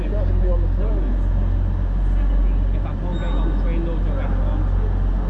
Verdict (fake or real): real